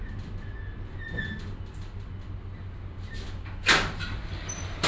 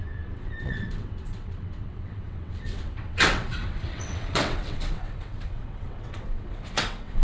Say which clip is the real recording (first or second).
first